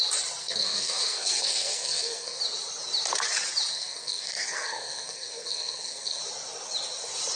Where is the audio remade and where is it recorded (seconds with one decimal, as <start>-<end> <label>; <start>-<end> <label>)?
0.0-0.4 recorded; 0.4-2.4 remade; 2.4-3.7 recorded; 3.7-6.2 remade; 6.2-7.4 recorded